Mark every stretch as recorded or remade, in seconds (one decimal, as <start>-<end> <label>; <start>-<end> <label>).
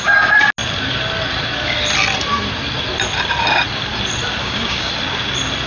0.0-4.4 recorded; 4.4-4.9 remade; 4.9-5.7 recorded